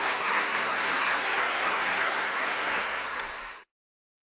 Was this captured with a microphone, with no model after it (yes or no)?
no